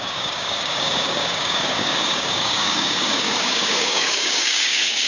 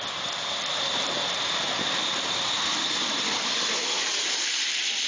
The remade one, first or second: first